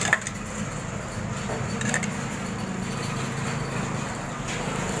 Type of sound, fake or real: real